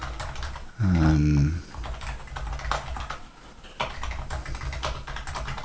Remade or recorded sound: recorded